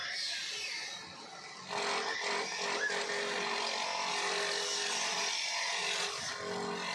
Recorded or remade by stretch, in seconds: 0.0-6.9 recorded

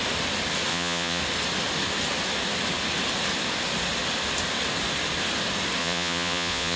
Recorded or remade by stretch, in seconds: 0.0-0.7 recorded; 0.7-1.2 remade; 1.2-5.8 recorded; 5.8-6.8 remade

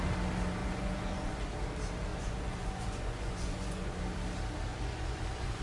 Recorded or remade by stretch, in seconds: 0.0-0.6 recorded; 0.6-1.4 remade; 1.4-2.1 recorded; 2.1-4.0 remade; 4.0-4.7 recorded; 4.7-5.6 remade

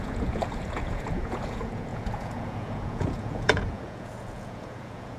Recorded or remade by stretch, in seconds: 0.0-5.2 remade

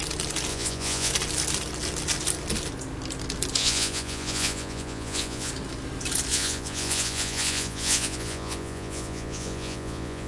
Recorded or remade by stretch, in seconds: 0.0-0.5 recorded; 0.5-1.1 remade; 1.1-3.6 recorded; 3.6-5.5 remade; 5.5-6.3 recorded; 6.3-10.3 remade

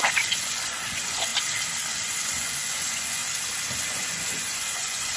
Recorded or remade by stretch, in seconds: 0.0-1.3 remade; 1.3-1.9 recorded; 1.9-3.2 remade; 3.2-3.9 recorded; 3.9-5.2 remade